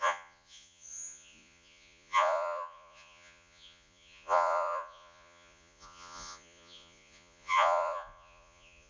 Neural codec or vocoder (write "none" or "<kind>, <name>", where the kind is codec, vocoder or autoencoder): vocoder, Vocos